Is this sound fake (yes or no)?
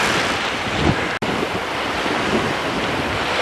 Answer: no